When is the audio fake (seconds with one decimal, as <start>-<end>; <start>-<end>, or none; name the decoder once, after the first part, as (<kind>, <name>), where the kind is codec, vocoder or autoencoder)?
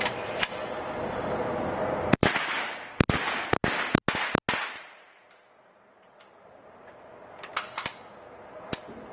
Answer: 0.0-0.6 (vocoder, BigVGAN v2); 5.6-7.5; 8.2-9.1